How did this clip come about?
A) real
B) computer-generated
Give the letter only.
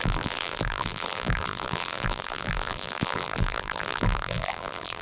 B